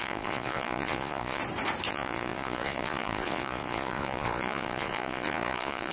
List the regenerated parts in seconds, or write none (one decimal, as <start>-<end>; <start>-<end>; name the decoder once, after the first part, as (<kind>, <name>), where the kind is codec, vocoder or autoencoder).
0.0-1.4 (vocoder, Vocos); 1.9-5.9